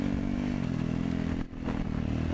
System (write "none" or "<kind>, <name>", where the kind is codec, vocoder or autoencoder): none